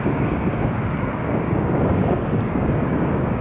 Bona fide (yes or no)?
no